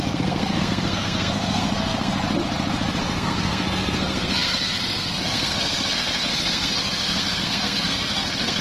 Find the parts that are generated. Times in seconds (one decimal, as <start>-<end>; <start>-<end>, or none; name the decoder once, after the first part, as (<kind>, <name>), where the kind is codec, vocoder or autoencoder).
0.0-2.1 (codec, SNAC); 3.0-8.6

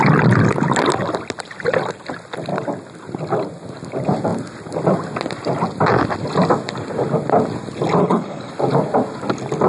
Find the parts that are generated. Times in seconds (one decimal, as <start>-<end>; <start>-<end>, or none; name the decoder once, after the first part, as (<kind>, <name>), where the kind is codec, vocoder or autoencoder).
8.0-8.5 (codec, HILCodec)

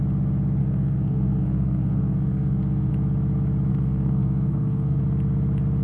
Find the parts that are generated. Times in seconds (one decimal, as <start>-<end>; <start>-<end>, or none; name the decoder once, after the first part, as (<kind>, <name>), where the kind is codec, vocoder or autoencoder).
0.6-2.9 (codec, SNAC); 3.7-5.0

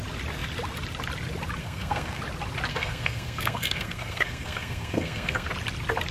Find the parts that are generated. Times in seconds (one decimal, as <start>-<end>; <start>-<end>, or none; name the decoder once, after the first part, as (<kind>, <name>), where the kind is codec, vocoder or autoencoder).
1.6-2.2 (codec, SNAC); 2.7-5.5